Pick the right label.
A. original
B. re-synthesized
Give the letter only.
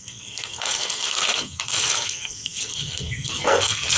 B